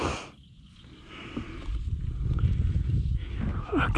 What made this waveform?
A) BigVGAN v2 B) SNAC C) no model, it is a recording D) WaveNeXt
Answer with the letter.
C